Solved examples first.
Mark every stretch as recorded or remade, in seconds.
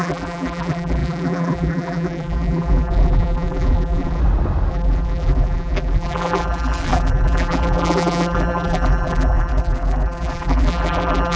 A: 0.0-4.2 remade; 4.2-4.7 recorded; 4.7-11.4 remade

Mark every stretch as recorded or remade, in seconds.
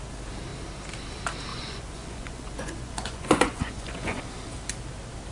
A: 0.0-1.5 recorded; 1.5-4.2 remade; 4.2-5.3 recorded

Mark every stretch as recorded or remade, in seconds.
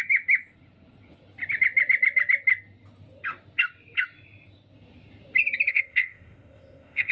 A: 0.0-5.7 recorded; 5.7-7.1 remade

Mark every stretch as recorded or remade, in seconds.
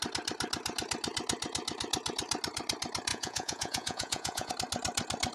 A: 0.0-3.1 recorded; 3.1-4.5 remade; 4.5-5.3 recorded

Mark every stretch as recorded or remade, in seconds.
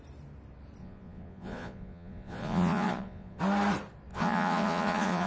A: 0.0-0.8 recorded; 0.8-3.4 remade; 3.4-4.1 recorded; 4.1-5.3 remade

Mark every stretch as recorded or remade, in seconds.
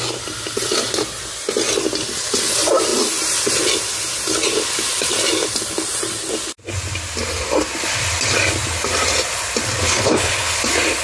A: 0.0-9.8 recorded; 9.8-10.6 remade; 10.6-11.0 recorded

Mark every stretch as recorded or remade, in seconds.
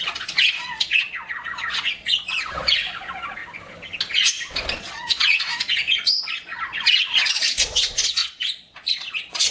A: 0.0-3.4 remade; 3.4-4.7 recorded; 4.7-9.5 remade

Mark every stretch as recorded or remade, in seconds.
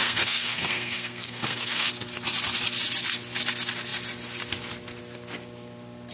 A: 0.0-1.9 remade; 1.9-6.1 recorded